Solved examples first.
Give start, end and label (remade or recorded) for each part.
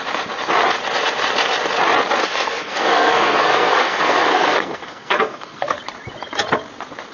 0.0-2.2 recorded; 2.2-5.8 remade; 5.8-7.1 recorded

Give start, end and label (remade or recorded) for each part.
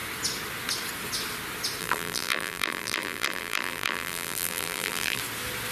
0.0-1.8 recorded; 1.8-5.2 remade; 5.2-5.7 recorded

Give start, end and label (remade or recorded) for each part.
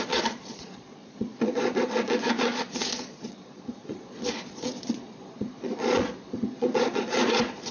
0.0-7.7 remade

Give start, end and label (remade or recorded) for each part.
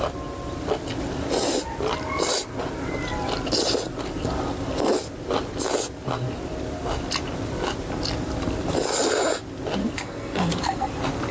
0.0-9.8 recorded; 9.8-10.9 remade; 10.9-11.3 recorded